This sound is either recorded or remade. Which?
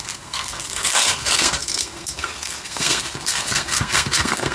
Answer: remade